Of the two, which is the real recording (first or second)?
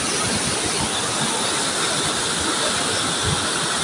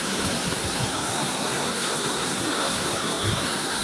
first